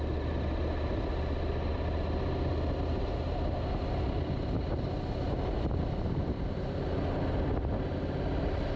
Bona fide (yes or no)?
yes